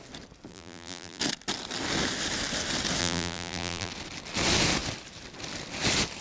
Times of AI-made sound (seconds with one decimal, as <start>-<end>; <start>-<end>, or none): 0.5-1.2; 3.0-3.9